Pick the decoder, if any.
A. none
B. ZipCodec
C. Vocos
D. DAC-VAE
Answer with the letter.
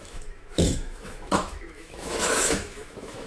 D